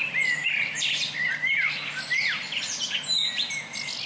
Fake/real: real